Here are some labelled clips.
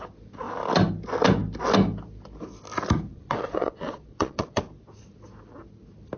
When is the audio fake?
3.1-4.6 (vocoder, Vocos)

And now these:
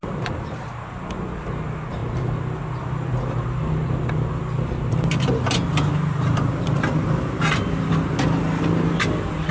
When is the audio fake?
none

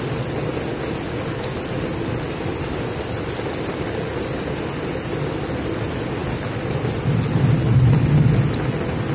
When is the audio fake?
none

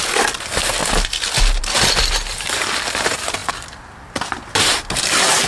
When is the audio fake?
none

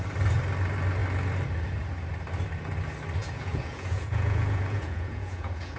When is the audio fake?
3.2-5.8 (vocoder, Vocos)